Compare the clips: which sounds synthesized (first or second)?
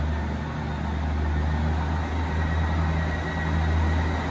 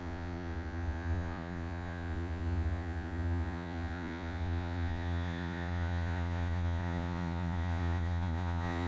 second